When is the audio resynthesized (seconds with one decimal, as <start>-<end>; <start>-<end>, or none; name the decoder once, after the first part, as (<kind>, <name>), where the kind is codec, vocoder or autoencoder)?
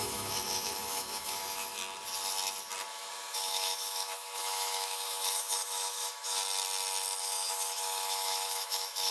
0.0-1.8 (autoencoder, DAC-VAE); 2.9-6.4; 7.2-9.1